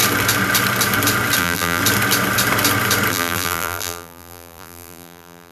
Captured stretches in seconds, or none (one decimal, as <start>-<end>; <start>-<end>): 0.0-1.4; 1.8-3.1